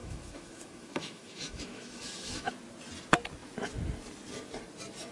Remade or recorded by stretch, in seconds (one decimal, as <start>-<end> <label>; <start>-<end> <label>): 0.0-2.5 remade; 2.5-5.1 recorded